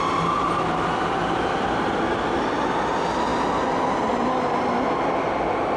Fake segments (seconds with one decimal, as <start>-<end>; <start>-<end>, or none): none

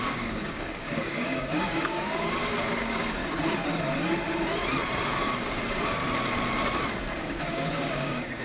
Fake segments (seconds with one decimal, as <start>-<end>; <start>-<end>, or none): 0.0-3.2; 5.0-6.0; 7.2-8.4

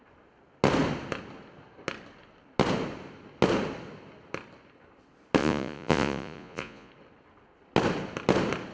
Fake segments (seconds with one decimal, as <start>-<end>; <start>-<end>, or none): 5.4-6.9

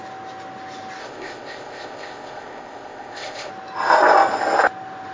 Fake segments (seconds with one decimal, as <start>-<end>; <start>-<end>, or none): 1.0-3.5

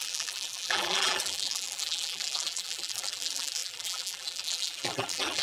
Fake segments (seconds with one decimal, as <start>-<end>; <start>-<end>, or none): 0.0-5.4

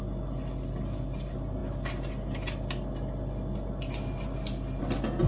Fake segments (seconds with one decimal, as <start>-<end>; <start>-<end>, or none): none

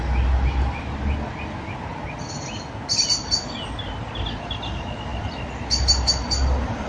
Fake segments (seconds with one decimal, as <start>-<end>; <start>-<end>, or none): none

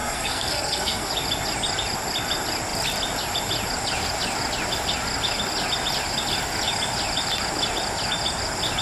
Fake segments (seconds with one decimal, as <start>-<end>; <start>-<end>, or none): 0.0-1.1